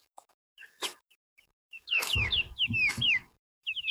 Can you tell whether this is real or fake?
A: fake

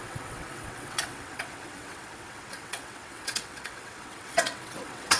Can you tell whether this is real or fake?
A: fake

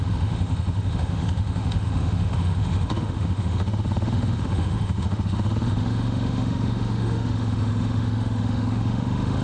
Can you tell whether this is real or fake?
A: fake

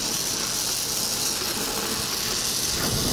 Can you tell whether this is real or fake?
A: real